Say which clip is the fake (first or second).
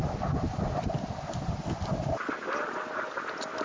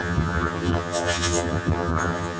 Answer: second